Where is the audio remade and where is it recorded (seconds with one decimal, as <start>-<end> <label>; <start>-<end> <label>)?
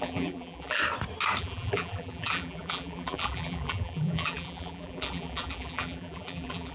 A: 0.0-0.8 remade; 0.8-1.4 recorded; 1.4-6.7 remade